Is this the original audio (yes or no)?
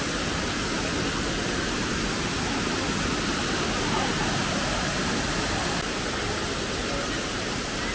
yes